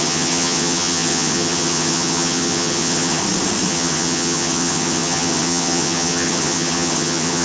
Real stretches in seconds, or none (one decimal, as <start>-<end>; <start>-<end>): 3.2-3.7